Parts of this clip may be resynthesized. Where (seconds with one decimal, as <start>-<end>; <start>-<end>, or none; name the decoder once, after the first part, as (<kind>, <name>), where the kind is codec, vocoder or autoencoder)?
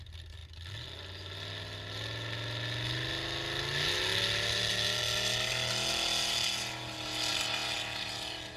none